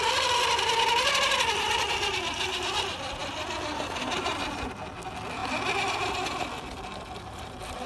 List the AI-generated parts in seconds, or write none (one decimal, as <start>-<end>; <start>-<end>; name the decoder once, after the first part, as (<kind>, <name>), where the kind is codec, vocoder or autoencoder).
none